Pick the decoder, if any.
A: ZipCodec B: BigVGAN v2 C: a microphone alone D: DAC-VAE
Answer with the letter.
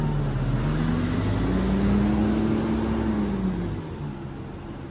C